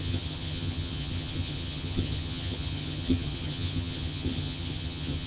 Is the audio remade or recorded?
remade